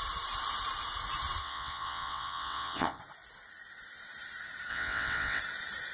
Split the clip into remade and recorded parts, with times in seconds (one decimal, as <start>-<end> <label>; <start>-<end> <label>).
0.0-1.4 recorded; 1.4-3.0 remade; 3.0-4.7 recorded; 4.7-5.4 remade; 5.4-5.9 recorded